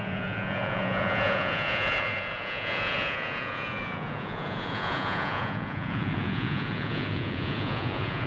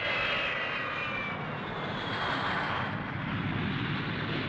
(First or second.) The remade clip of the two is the first